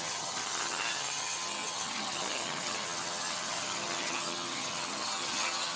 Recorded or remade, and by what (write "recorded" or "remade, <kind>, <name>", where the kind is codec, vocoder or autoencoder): remade, vocoder, HiFi-GAN